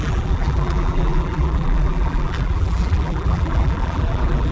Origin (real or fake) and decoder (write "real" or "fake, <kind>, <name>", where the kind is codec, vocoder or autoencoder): fake, vocoder, BigVGAN v2